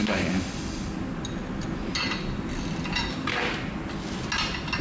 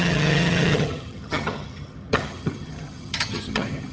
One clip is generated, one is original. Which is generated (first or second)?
second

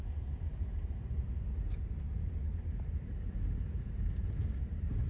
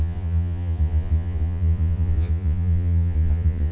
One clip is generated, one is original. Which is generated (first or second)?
second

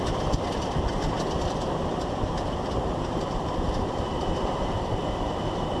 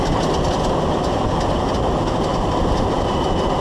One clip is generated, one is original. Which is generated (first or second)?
first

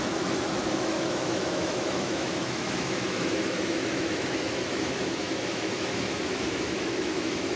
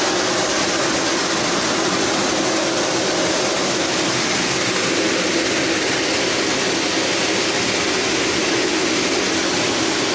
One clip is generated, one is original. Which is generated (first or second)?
first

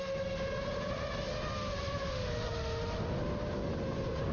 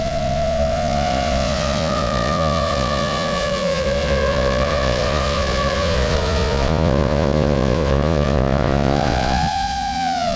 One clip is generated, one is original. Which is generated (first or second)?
second